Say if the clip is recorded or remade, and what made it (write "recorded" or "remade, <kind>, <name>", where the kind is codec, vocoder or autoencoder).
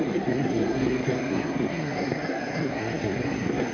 remade, codec, SNAC